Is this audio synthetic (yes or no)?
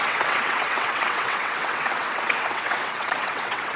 yes